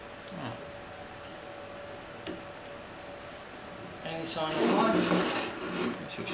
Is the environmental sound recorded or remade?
recorded